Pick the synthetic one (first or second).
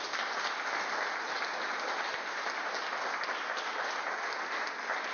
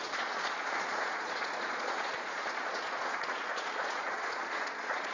second